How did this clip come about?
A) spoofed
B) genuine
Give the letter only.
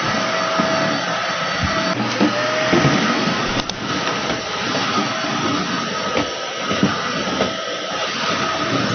B